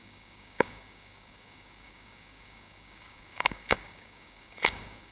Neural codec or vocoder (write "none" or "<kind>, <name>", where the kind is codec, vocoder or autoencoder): codec, DAC